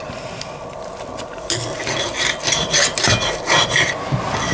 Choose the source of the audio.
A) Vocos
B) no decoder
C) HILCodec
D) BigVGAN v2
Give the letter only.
B